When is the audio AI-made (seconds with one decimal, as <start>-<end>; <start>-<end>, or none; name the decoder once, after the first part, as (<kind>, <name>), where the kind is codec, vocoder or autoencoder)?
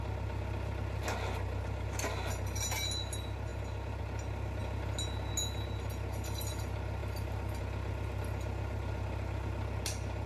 none